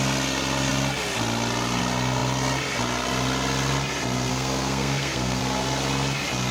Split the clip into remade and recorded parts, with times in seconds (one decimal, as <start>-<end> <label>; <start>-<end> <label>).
0.0-4.3 recorded; 4.3-5.4 remade; 5.4-6.5 recorded